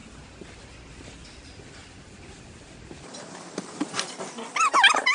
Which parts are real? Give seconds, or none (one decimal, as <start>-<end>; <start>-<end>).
0.0-5.1